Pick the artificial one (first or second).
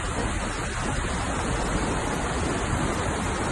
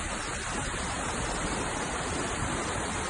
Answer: second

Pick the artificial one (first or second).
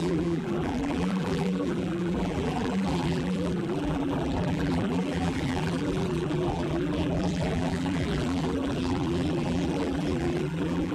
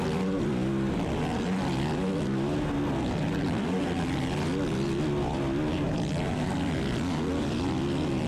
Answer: first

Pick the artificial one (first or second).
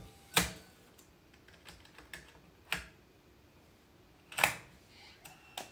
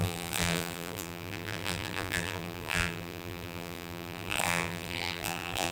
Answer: second